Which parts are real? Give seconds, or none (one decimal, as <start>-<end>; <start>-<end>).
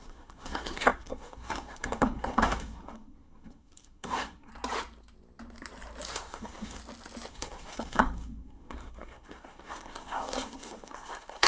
4.5-6.1; 6.8-7.3